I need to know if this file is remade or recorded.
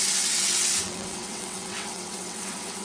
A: remade